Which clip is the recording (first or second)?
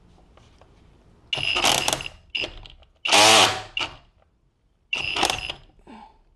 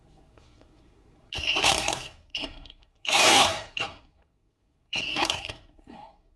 first